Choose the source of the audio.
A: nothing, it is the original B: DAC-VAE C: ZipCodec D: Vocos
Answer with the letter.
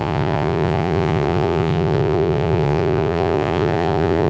D